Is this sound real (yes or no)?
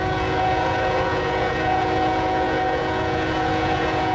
no